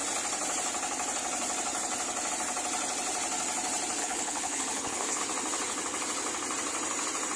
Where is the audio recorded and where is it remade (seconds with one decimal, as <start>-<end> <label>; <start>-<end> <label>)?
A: 0.0-4.0 recorded; 4.0-5.2 remade; 5.2-7.4 recorded

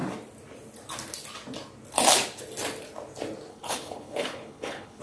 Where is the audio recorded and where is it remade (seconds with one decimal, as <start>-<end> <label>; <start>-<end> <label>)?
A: 0.0-3.5 recorded; 3.5-5.0 remade